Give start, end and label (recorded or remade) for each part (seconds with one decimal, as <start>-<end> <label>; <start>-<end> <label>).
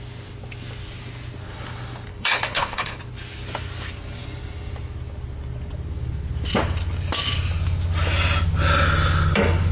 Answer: 0.0-2.1 recorded; 2.1-3.0 remade; 3.0-9.7 recorded